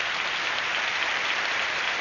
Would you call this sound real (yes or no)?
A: yes